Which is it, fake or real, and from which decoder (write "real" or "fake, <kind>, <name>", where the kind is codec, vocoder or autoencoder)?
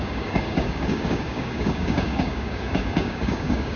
fake, codec, DAC